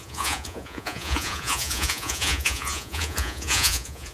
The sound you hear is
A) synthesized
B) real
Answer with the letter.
A